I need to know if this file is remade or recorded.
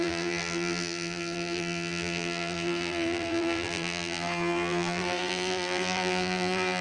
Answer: remade